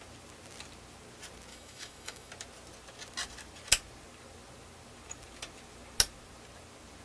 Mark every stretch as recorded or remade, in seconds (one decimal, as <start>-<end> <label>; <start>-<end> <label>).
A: 0.0-1.5 recorded; 1.5-2.3 remade; 2.3-7.0 recorded